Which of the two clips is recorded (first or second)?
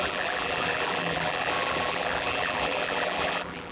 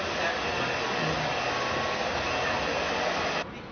second